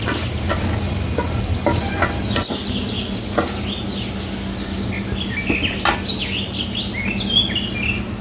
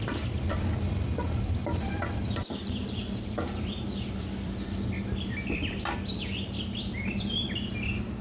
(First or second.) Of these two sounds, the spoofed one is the second